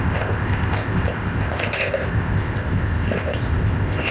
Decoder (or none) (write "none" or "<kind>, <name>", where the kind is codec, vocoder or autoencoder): codec, ZipCodec